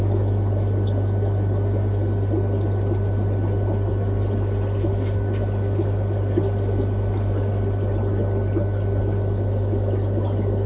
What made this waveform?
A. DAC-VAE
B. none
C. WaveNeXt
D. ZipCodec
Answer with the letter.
B